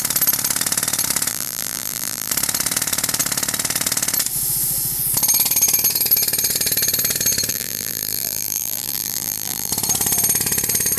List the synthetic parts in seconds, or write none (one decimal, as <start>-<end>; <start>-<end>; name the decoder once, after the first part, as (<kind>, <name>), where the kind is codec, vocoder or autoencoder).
1.3-2.3 (vocoder, BigVGAN v2); 7.5-9.7